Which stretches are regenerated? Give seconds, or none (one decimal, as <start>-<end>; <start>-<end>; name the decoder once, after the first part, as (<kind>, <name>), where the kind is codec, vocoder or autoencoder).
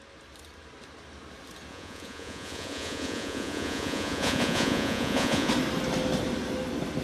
1.7-5.5 (vocoder, Vocos)